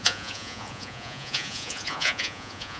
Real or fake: fake